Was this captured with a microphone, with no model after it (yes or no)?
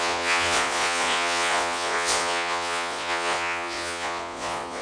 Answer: no